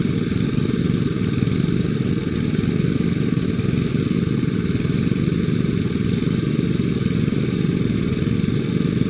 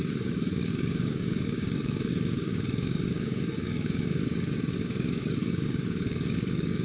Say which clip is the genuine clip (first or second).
first